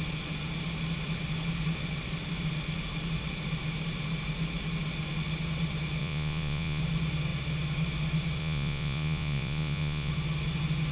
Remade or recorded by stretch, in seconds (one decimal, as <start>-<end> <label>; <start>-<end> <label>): 0.0-6.0 recorded; 6.0-6.8 remade; 6.8-8.4 recorded; 8.4-10.1 remade; 10.1-10.9 recorded